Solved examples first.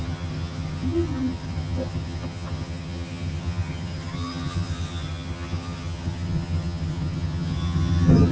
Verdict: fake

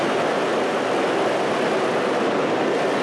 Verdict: real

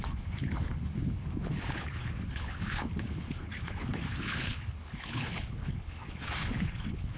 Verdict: fake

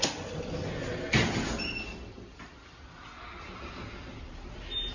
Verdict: real